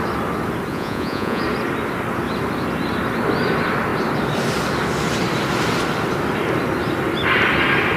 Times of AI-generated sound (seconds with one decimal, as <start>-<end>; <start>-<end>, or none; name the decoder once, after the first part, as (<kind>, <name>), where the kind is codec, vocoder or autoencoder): 0.7-1.4 (vocoder, Vocos)